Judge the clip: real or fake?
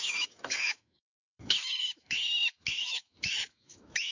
fake